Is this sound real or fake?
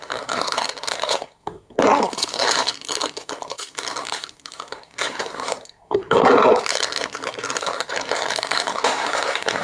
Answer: fake